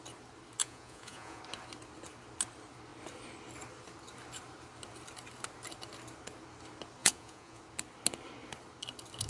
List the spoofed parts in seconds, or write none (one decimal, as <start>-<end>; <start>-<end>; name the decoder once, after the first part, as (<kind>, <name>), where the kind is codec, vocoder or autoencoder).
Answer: 0.6-1.4 (vocoder, Vocos); 7.0-7.6